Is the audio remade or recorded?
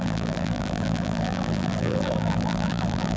remade